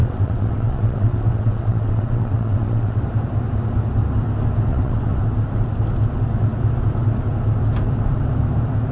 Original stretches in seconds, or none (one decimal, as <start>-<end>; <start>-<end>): 3.0-4.7; 5.2-8.9